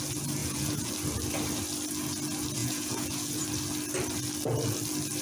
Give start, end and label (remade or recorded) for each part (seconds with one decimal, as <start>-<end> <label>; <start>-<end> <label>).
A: 0.0-0.4 recorded; 0.4-0.9 remade; 0.9-2.6 recorded; 2.6-3.4 remade; 3.4-5.2 recorded